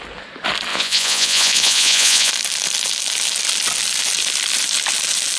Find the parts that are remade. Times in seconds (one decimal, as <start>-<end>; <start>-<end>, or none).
0.7-2.3